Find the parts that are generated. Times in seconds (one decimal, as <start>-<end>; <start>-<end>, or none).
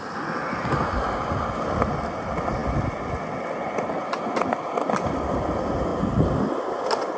none